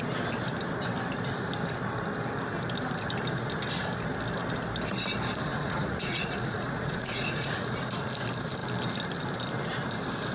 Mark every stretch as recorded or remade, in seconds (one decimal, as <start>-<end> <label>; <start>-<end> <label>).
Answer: 0.0-5.5 recorded; 5.5-8.1 remade; 8.1-10.3 recorded